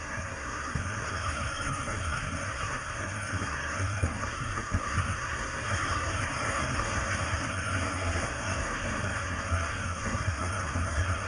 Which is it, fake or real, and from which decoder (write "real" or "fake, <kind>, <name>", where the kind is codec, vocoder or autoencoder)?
fake, codec, SNAC